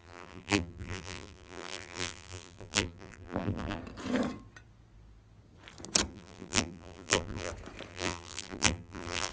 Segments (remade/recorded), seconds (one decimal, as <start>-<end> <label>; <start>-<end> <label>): 0.0-3.8 remade; 3.8-6.1 recorded; 6.1-7.5 remade; 7.5-7.9 recorded; 7.9-9.3 remade